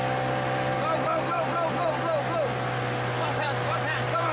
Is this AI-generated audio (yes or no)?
no